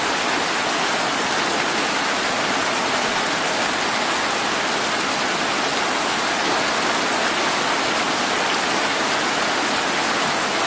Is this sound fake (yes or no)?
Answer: no